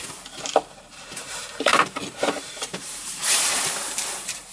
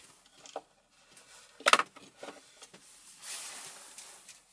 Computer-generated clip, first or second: first